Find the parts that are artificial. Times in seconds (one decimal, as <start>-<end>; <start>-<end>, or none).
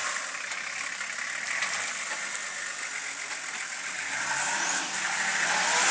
none